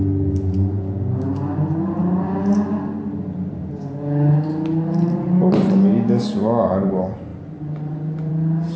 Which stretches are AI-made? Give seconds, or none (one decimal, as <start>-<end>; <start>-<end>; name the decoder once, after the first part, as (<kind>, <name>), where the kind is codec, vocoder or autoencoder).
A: none